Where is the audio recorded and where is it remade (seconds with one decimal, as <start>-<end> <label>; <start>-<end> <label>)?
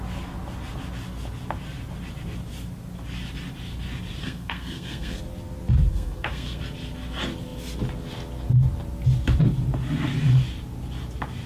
0.0-4.2 recorded; 4.2-5.2 remade; 5.2-5.9 recorded; 5.9-6.6 remade; 6.6-11.5 recorded